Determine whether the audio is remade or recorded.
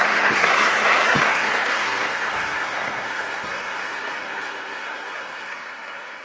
remade